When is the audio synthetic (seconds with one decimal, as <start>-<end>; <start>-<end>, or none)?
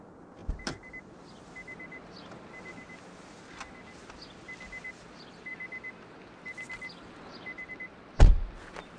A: none